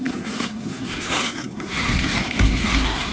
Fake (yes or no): yes